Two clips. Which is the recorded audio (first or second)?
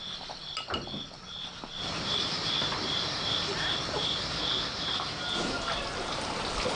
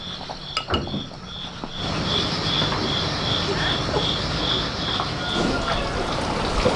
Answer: second